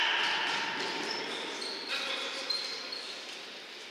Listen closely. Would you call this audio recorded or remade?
remade